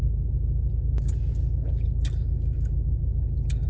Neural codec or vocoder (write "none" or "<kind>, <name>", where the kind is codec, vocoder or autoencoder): none